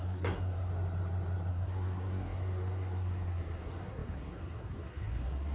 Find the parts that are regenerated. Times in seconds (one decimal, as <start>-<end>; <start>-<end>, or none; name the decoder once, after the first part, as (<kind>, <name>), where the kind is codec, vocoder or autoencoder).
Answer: 0.0-0.7 (codec, SNAC); 1.5-5.5